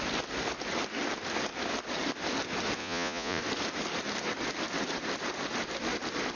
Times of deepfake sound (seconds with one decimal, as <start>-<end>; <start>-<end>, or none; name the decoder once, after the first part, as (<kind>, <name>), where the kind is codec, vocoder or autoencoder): 2.8-3.4 (vocoder, Vocos)